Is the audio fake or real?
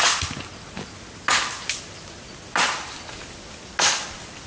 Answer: real